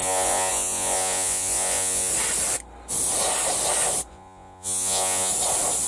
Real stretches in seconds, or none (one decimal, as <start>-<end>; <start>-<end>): 2.1-4.1; 5.3-5.9